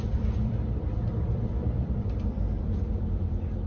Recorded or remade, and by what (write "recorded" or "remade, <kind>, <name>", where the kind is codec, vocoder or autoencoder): remade, vocoder, BigVGAN v2